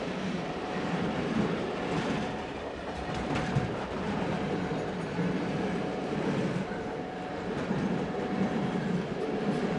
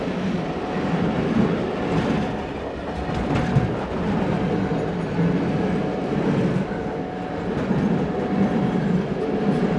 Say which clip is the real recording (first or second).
second